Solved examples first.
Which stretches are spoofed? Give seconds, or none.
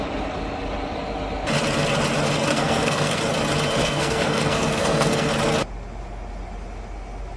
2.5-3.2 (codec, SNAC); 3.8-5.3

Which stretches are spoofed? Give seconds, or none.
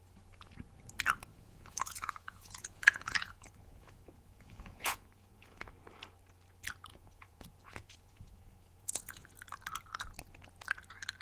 1.3-5.7 (vocoder, Vocos); 6.9-9.3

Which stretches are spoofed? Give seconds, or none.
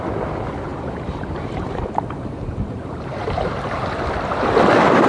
0.7-3.8 (vocoder, BigVGAN v2)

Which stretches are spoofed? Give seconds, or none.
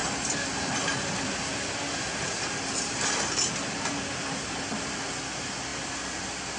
none